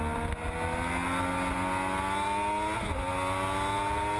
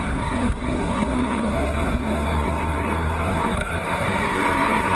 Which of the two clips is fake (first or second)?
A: second